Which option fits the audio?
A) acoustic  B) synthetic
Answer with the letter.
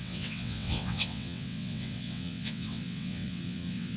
B